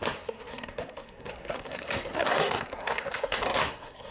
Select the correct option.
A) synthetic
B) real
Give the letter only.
A